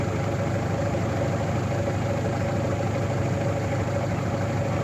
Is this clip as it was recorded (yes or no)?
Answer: yes